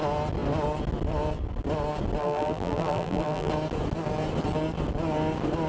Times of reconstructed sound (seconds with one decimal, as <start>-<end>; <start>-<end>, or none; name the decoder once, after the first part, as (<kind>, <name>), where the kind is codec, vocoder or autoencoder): 2.2-3.5 (vocoder, BigVGAN v2)